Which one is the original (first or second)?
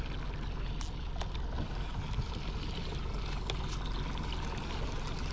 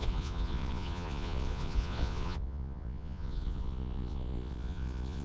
first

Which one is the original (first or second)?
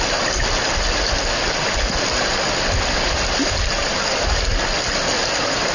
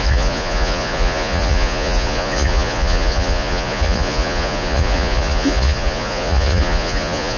first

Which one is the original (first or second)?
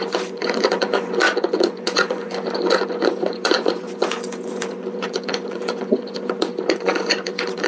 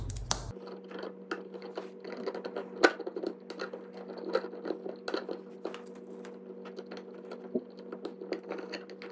second